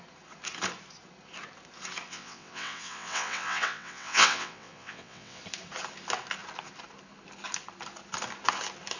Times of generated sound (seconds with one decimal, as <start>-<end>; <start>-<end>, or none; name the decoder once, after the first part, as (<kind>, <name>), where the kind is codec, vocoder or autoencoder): 2.1-5.4 (vocoder, WaveNeXt)